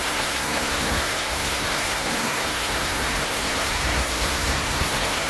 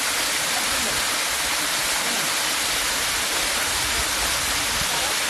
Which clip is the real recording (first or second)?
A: second